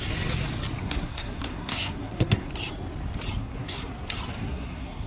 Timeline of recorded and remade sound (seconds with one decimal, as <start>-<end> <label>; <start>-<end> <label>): 0.0-0.8 recorded; 0.8-2.5 remade; 2.5-3.4 recorded; 3.4-3.9 remade; 3.9-4.4 recorded; 4.4-5.1 remade